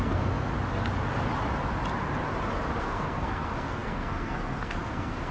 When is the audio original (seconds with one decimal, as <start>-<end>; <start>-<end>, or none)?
0.5-2.8